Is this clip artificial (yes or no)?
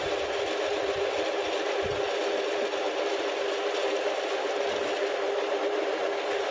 no